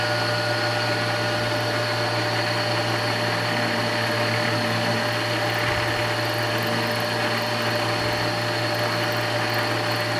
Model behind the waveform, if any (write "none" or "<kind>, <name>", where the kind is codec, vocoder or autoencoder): none